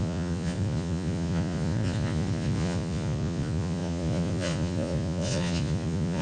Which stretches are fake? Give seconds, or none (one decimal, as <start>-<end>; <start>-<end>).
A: 0.0-6.2